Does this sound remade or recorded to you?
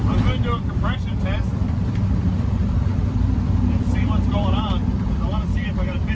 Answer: remade